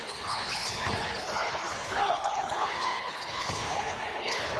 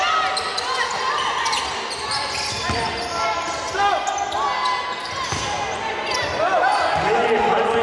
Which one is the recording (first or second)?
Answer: second